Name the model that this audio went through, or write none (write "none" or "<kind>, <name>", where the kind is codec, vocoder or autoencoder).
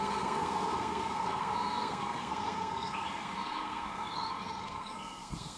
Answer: codec, SNAC